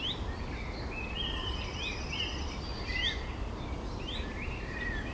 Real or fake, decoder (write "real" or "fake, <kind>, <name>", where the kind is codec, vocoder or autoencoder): real